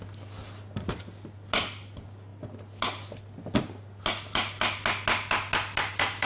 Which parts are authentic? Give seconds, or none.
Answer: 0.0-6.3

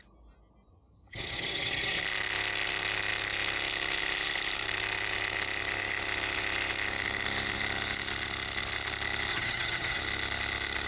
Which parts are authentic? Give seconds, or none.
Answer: 0.0-0.7; 2.0-9.3; 10.0-10.9